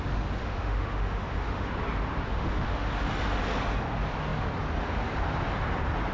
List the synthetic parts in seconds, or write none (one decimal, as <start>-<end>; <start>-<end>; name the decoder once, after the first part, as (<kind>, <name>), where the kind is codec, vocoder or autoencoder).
0.4-1.7 (autoencoder, DAC-VAE); 2.3-2.9